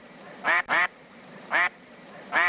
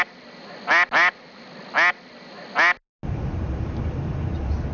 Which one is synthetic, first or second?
first